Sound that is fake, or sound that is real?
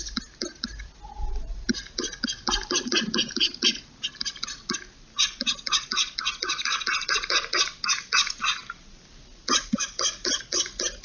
real